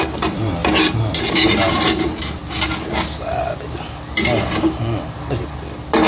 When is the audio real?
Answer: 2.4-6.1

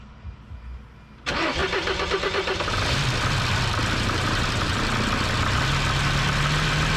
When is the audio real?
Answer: 0.0-3.8; 4.8-7.0

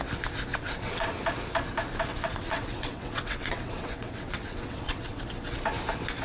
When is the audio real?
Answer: 0.0-0.5; 1.1-2.1; 5.2-6.2

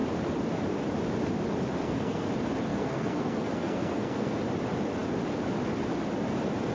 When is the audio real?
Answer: 0.0-1.8; 2.3-2.7; 4.4-6.7

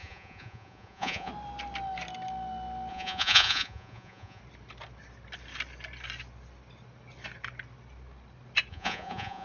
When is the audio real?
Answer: 1.3-2.9; 4.4-8.7

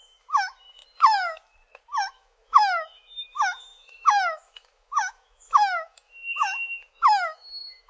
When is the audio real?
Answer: 0.8-2.1

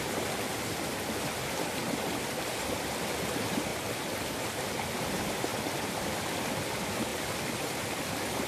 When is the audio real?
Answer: 0.0-8.5